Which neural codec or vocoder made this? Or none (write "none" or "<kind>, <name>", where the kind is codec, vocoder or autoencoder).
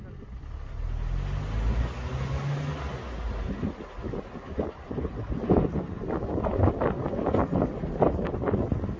none